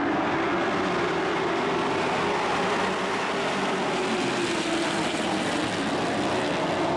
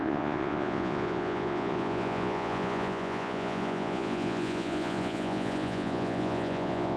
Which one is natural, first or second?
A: first